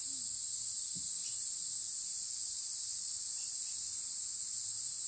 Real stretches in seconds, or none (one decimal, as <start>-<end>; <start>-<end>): 0.0-5.1